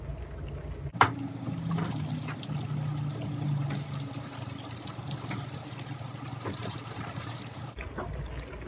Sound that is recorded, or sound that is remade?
recorded